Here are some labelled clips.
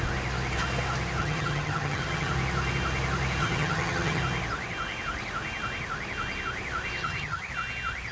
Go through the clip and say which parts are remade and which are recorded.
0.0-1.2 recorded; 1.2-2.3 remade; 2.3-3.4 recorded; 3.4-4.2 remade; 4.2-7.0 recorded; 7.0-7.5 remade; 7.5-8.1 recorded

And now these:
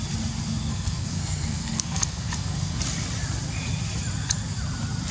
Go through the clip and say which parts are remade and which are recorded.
0.0-0.7 recorded; 0.7-2.8 remade; 2.8-5.1 recorded

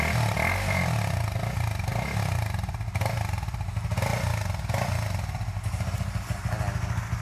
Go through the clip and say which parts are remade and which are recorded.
0.0-7.2 recorded

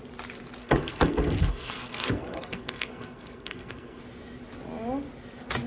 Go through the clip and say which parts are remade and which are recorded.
0.0-0.6 recorded; 0.6-4.0 remade; 4.0-5.7 recorded

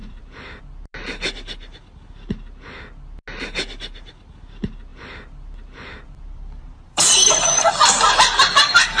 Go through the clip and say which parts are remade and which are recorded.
0.0-0.6 remade; 0.6-4.9 recorded; 4.9-7.7 remade; 7.7-9.0 recorded